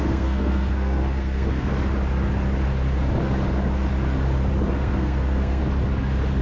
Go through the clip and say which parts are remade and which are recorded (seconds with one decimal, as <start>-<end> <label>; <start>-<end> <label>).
0.0-1.7 remade; 1.7-4.7 recorded; 4.7-5.6 remade; 5.6-6.4 recorded